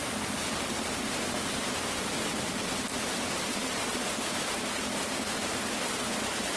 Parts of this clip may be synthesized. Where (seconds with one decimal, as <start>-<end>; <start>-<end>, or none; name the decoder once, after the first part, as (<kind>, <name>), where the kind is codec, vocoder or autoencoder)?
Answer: 3.5-4.1 (vocoder, Vocos)